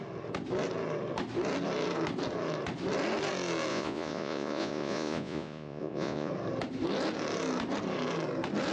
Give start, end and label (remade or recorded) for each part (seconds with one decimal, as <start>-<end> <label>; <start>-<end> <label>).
0.0-3.7 recorded; 3.7-6.3 remade; 6.3-8.7 recorded